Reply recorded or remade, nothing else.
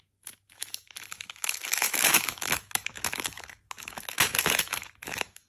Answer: remade